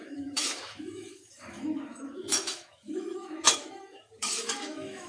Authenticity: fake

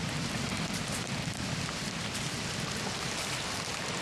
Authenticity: fake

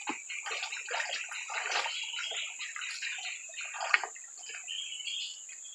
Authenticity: real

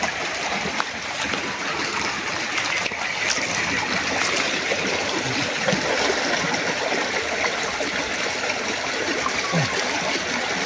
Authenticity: real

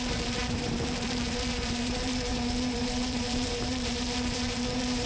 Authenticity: fake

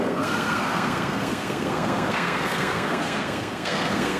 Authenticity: fake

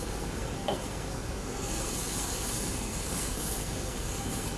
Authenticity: fake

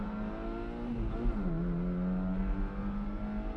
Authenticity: real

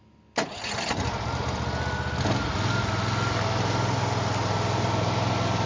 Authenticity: real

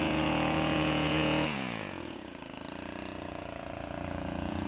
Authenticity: fake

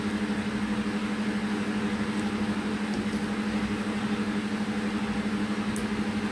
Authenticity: real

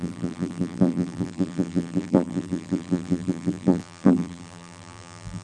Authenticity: fake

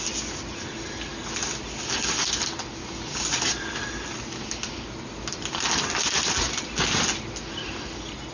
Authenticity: real